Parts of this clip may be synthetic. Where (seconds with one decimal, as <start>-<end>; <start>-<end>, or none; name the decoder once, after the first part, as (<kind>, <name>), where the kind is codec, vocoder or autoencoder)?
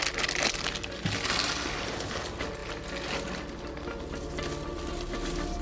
none